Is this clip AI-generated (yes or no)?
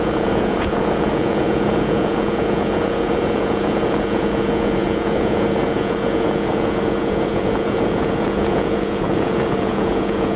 yes